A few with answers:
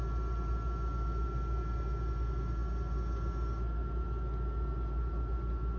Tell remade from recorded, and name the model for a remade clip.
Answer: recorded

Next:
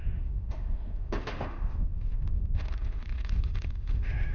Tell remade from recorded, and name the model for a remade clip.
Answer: remade, autoencoder, DAC-VAE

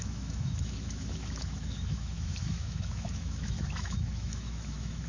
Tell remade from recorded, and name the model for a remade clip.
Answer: remade, autoencoder, DAC-VAE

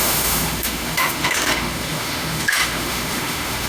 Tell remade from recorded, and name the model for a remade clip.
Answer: remade, autoencoder, DAC-VAE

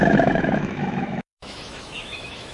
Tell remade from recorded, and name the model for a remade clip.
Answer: remade, autoencoder, DAC-VAE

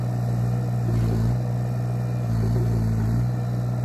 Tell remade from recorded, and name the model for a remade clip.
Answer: recorded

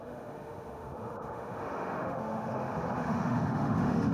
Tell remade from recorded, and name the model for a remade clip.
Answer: remade, autoencoder, DAC-VAE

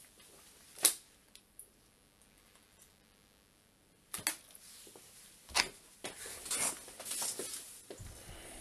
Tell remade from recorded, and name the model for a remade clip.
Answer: recorded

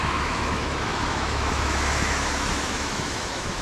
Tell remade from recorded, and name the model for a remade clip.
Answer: remade, autoencoder, DAC-VAE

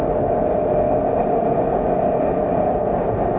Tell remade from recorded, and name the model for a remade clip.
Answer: recorded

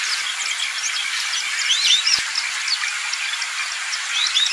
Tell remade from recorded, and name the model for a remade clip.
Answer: recorded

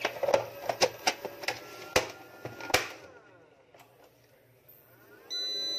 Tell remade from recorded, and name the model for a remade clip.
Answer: recorded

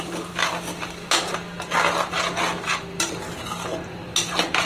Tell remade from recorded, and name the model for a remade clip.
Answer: recorded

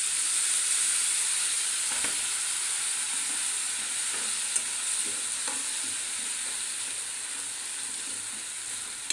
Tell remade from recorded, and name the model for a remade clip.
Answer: recorded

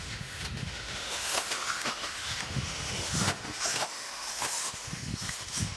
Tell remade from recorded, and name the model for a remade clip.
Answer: remade, autoencoder, DAC-VAE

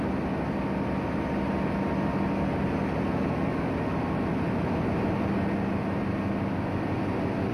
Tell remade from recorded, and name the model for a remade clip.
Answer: recorded